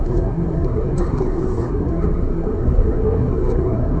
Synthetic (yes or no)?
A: yes